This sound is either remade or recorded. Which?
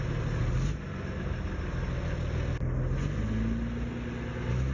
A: recorded